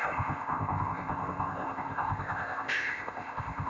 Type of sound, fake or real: fake